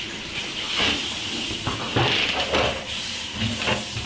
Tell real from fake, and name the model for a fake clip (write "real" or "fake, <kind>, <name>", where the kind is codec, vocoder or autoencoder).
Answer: real